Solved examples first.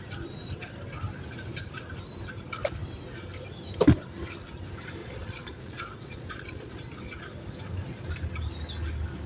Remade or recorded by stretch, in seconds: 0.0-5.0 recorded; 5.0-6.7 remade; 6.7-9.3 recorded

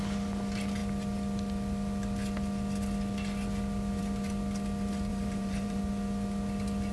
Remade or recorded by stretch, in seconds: 0.0-5.1 recorded; 5.1-5.8 remade; 5.8-6.9 recorded

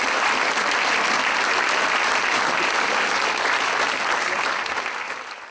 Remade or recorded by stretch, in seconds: 0.0-5.5 recorded